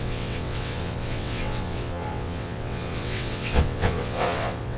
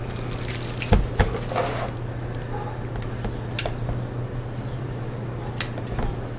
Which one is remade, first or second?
first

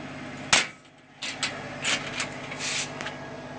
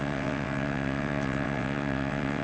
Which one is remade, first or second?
second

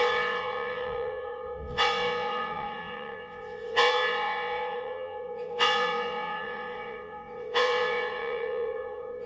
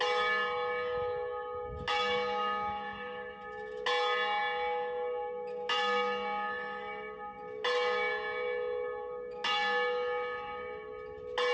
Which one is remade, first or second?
first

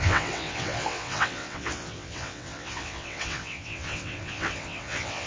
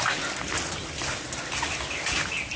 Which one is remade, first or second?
first